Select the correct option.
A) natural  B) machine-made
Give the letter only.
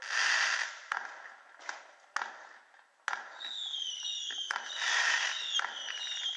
A